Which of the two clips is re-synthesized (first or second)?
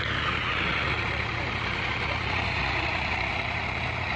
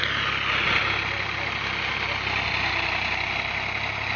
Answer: first